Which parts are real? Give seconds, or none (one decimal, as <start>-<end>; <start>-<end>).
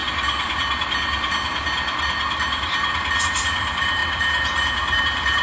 0.0-3.2